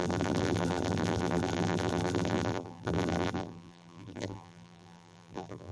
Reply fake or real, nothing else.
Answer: fake